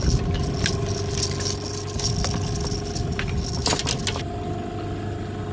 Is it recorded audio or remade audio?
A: recorded